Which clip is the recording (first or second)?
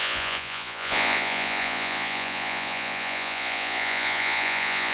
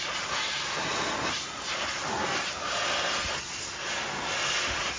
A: second